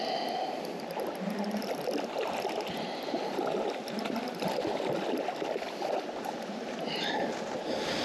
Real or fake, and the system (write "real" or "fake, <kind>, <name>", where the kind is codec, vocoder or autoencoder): real